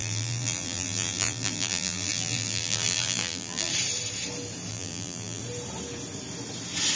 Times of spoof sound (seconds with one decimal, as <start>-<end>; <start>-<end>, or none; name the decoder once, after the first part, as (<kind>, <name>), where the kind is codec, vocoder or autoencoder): 0.0-3.7 (vocoder, BigVGAN v2); 4.7-5.4